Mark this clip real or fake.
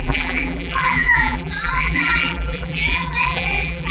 fake